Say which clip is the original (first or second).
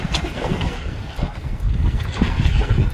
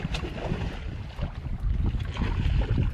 second